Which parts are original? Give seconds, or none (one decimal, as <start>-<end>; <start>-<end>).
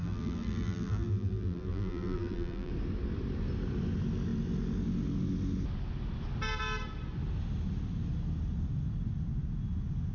2.7-10.1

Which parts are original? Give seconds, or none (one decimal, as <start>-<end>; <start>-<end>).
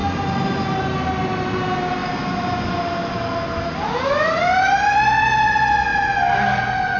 0.0-7.0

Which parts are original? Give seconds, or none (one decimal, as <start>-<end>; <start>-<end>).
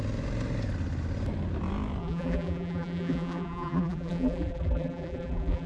0.0-2.0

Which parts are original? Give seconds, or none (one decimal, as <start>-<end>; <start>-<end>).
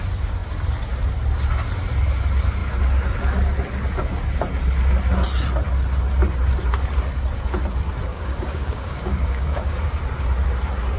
0.0-8.1; 9.9-11.0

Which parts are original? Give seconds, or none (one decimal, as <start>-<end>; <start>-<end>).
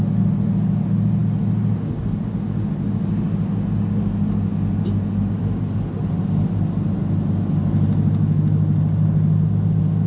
0.0-10.1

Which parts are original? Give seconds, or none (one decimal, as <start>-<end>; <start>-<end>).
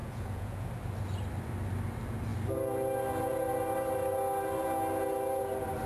0.7-5.9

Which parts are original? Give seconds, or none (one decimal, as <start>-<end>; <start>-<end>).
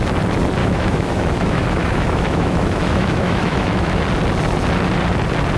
0.0-0.6; 4.0-5.6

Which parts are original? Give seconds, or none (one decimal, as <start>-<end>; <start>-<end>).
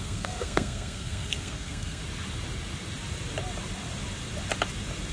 2.0-5.1